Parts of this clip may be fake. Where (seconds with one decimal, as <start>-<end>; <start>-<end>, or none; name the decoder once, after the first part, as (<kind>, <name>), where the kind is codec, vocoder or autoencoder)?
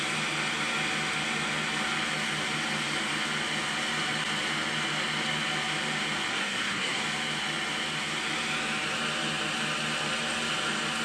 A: 6.3-7.0 (codec, SNAC)